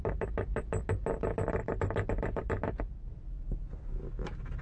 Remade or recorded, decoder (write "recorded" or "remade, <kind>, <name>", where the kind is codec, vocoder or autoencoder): recorded